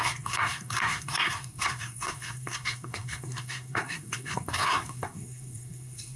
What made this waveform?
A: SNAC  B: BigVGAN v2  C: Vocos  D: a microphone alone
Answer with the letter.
A